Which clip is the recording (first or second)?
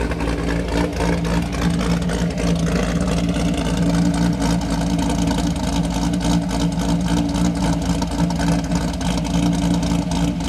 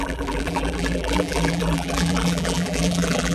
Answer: first